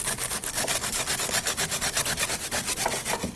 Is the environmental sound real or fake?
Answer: real